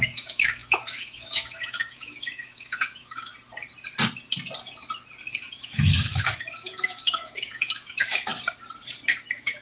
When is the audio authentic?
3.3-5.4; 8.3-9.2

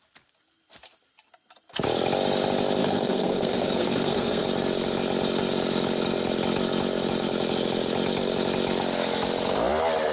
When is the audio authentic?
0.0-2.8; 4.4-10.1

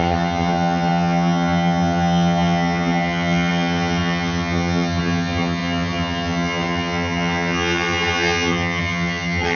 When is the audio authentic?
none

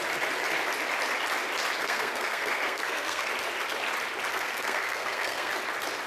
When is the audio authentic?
0.0-1.8; 3.3-4.3; 5.5-6.1

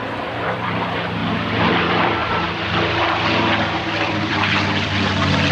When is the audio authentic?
1.2-1.7; 2.2-3.8

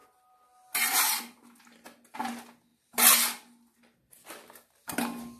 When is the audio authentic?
0.0-5.4

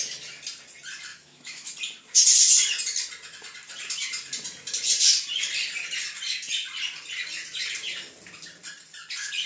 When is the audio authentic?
0.0-1.1; 1.7-9.5